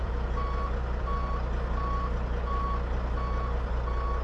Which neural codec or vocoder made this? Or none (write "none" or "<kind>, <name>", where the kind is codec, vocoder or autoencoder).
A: none